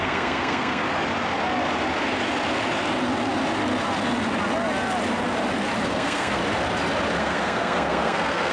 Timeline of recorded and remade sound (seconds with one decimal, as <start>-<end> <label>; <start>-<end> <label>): 0.0-0.8 remade; 0.8-5.8 recorded; 5.8-6.4 remade; 6.4-7.2 recorded; 7.2-8.5 remade